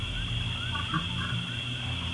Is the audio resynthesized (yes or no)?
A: no